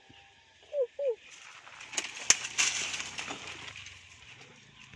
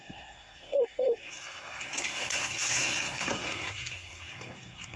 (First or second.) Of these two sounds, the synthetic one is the second